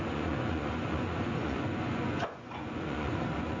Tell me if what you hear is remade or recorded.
remade